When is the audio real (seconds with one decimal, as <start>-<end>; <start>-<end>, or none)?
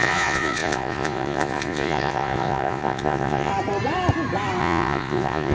3.5-4.6